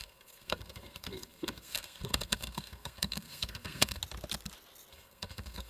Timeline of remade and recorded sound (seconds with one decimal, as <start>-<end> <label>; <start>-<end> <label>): 0.0-4.0 remade; 4.0-4.9 recorded; 4.9-5.7 remade